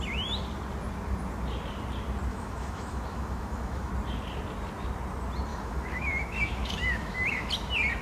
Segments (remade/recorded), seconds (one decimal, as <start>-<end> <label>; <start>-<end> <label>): 0.0-2.3 recorded; 2.3-3.9 remade; 3.9-5.5 recorded; 5.5-7.5 remade; 7.5-8.0 recorded